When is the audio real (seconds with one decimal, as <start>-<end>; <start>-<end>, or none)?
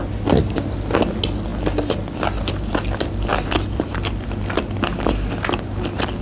0.0-6.2